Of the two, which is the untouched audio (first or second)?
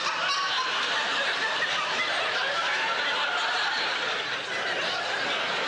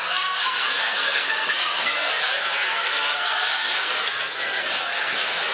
first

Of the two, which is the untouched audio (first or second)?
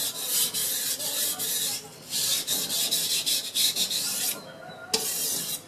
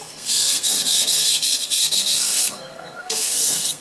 first